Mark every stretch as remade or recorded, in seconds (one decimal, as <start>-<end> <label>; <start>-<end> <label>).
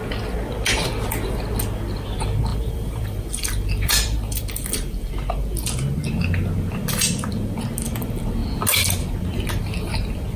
0.0-2.5 recorded; 2.5-5.1 remade; 5.1-10.4 recorded